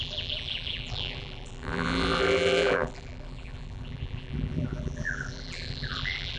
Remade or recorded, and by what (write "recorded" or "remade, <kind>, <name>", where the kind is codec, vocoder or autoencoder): remade, vocoder, BigVGAN v2